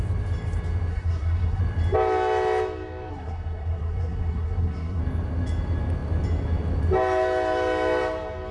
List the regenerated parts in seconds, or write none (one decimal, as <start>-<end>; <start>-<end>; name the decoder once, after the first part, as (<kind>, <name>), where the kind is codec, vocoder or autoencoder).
0.9-1.6 (codec, SNAC); 3.1-5.0